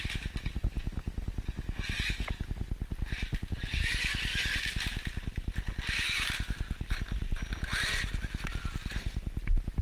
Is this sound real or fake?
real